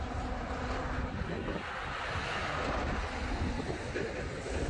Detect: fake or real real